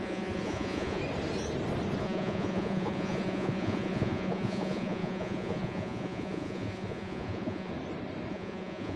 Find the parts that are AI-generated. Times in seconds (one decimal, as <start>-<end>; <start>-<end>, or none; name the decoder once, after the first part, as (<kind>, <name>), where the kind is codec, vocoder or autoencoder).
0.0-1.0 (vocoder, Vocos); 2.0-7.7; 8.3-9.0